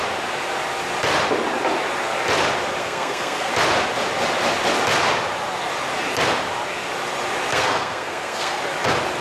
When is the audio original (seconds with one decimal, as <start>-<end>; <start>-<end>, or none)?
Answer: 0.0-2.8; 3.5-7.5; 8.6-9.2